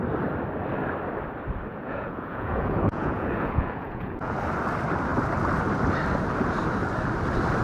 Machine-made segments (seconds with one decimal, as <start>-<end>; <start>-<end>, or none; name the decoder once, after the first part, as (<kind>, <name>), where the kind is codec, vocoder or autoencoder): 1.7-4.3 (vocoder, Vocos)